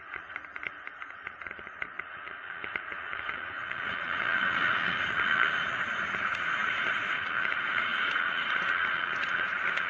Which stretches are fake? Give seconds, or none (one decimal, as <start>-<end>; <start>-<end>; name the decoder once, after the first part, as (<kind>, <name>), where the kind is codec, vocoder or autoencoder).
0.0-9.9 (vocoder, Vocos)